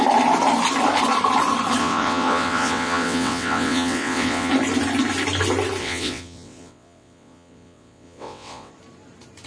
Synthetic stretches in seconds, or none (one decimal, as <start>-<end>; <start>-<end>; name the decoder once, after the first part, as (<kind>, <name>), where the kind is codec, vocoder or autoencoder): 1.8-4.5 (vocoder, WaveNeXt); 5.8-8.7